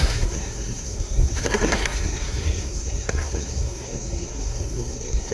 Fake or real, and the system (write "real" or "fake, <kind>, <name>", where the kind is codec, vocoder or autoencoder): fake, codec, SNAC